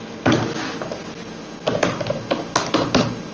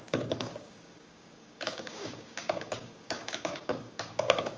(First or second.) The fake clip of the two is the second